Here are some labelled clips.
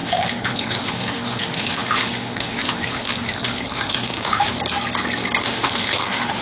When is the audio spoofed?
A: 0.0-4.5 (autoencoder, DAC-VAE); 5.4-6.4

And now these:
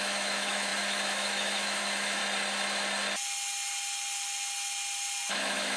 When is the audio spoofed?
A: 0.0-2.2 (autoencoder, DAC-VAE); 5.3-5.8

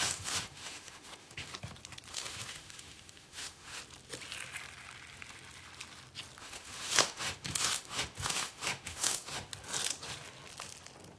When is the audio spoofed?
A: 0.0-1.5 (autoencoder, DAC-VAE); 2.1-3.8; 6.4-9.5

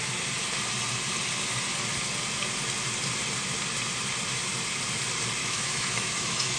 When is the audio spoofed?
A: 5.4-6.6 (autoencoder, DAC-VAE)

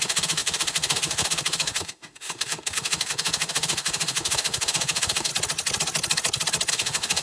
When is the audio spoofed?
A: 0.0-5.3 (autoencoder, DAC-VAE); 6.7-7.2

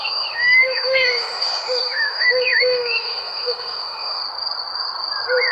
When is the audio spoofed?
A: 0.0-4.2 (autoencoder, DAC-VAE)